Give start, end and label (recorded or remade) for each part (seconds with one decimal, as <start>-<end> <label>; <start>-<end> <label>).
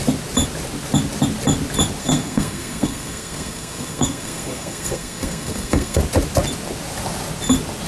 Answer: 0.0-2.0 recorded; 2.0-6.0 remade; 6.0-7.9 recorded